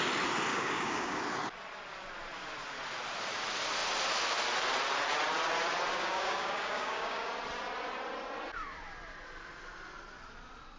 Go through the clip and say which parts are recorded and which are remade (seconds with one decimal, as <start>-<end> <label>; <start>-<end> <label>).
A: 0.0-0.5 recorded; 0.5-1.2 remade; 1.2-5.9 recorded; 5.9-7.3 remade; 7.3-10.8 recorded